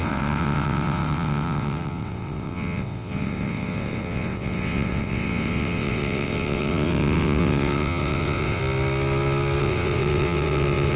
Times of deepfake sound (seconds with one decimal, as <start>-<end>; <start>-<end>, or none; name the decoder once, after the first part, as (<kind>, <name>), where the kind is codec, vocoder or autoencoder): 0.0-8.6 (vocoder, WaveNeXt); 9.6-11.0